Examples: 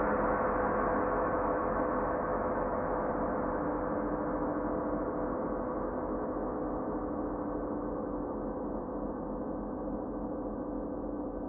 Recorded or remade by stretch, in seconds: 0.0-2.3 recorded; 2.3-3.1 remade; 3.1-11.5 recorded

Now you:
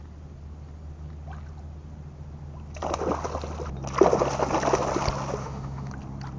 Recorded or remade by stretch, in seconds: 0.0-5.4 recorded; 5.4-5.9 remade; 5.9-6.4 recorded

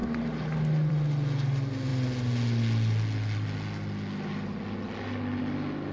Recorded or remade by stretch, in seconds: 0.0-5.9 recorded

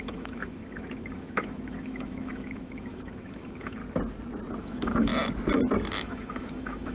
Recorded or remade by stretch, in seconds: 0.0-3.8 remade; 3.8-4.6 recorded; 4.6-5.1 remade; 5.1-5.9 recorded; 5.9-6.9 remade

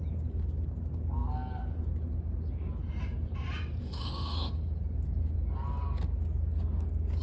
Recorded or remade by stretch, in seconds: 0.0-3.8 recorded; 3.8-4.5 remade; 4.5-7.2 recorded